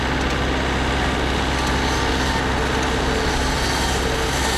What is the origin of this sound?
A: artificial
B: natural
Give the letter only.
B